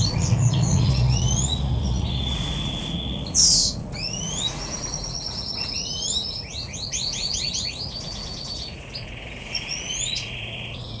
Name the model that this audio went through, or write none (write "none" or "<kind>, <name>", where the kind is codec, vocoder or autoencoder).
vocoder, Vocos